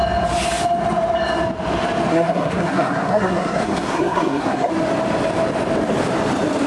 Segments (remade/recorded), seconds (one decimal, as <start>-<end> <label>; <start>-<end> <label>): 0.0-2.1 recorded; 2.1-4.7 remade; 4.7-6.7 recorded